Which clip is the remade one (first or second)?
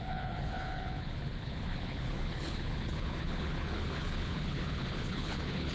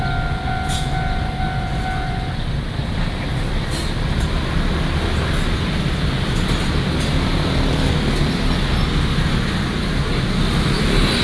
first